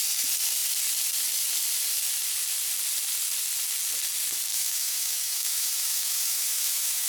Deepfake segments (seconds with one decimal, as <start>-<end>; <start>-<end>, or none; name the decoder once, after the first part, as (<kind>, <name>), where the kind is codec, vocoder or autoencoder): 4.5-7.1 (autoencoder, DAC-VAE)